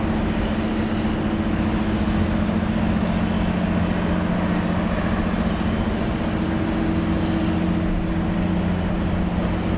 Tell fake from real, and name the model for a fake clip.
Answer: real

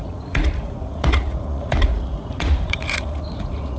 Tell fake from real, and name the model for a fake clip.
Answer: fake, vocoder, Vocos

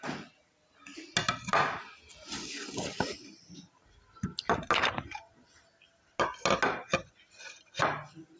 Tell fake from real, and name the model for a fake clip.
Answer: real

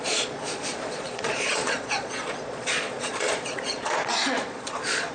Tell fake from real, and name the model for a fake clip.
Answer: fake, vocoder, Vocos